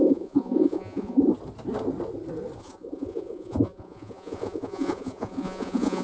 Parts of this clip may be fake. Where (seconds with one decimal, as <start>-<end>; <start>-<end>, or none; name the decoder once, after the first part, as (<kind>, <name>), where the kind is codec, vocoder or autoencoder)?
0.0-1.3 (vocoder, Vocos); 2.6-6.0